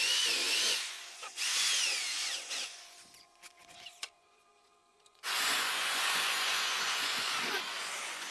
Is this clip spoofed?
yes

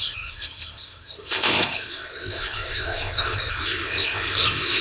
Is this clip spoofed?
yes